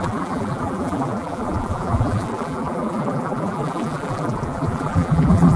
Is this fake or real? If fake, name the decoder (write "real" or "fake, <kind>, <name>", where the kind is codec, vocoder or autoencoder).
fake, vocoder, BigVGAN v2